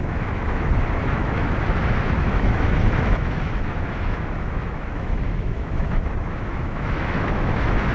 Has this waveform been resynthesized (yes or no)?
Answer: yes